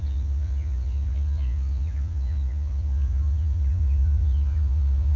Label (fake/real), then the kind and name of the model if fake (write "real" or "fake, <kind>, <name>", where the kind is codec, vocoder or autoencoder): fake, vocoder, Vocos